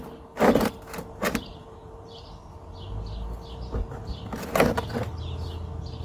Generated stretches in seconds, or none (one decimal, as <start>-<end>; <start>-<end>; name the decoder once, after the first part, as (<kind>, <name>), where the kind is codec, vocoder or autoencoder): 1.5-2.5 (vocoder, BigVGAN v2)

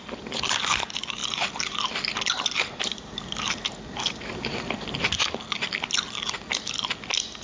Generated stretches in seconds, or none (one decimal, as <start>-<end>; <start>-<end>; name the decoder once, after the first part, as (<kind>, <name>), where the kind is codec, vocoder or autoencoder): 1.2-4.7 (vocoder, BigVGAN v2)